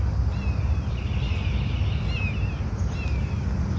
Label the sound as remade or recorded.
recorded